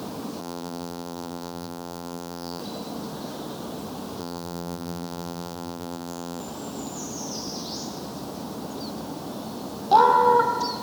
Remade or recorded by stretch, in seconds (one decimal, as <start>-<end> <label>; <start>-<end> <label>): 0.0-0.4 recorded; 0.4-2.6 remade; 2.6-4.2 recorded; 4.2-6.4 remade; 6.4-10.8 recorded